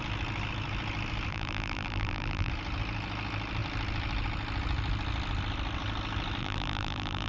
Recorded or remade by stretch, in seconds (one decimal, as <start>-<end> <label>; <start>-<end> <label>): 0.0-1.3 recorded; 1.3-2.5 remade; 2.5-6.4 recorded; 6.4-7.3 remade